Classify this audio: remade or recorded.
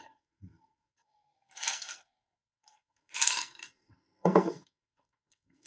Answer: remade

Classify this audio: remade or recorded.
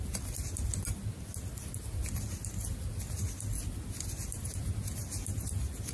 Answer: recorded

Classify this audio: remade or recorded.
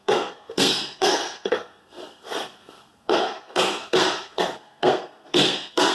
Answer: remade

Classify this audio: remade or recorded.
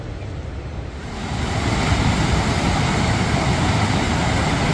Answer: recorded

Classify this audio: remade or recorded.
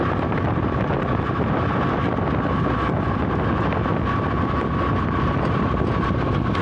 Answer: recorded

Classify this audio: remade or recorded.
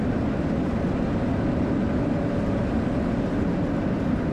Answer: recorded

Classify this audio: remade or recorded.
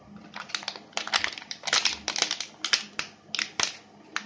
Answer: recorded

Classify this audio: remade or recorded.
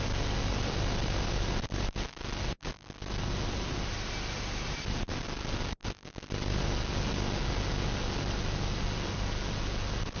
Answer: recorded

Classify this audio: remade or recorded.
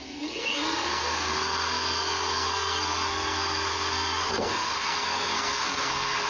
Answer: remade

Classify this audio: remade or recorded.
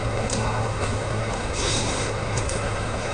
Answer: remade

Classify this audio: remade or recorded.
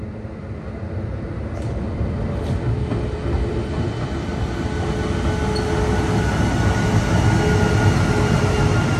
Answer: recorded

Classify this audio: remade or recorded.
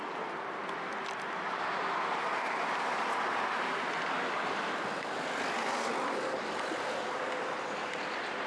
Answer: recorded